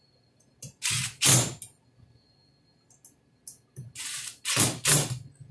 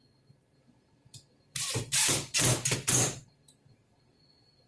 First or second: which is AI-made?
second